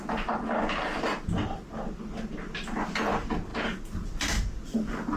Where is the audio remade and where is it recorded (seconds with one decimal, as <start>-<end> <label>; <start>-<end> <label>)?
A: 0.0-5.2 recorded